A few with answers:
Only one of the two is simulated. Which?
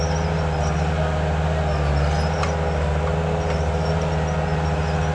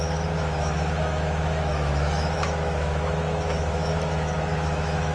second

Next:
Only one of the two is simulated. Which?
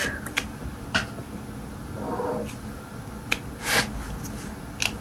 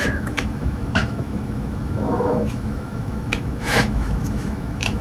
second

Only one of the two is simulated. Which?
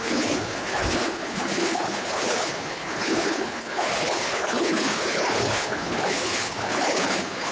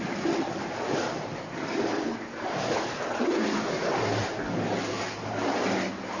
first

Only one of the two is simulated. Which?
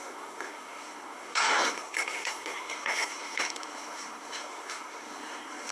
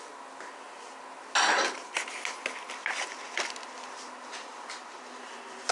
first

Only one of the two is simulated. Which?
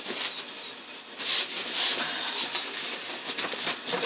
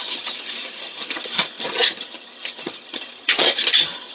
second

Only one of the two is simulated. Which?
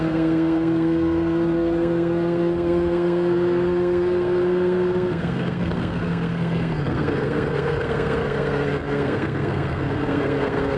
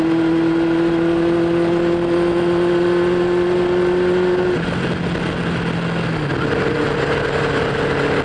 first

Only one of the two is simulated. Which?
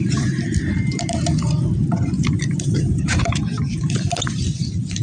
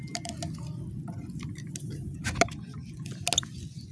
first